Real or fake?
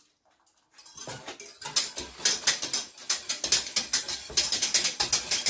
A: real